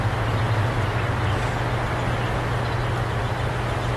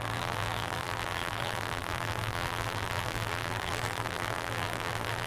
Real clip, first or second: first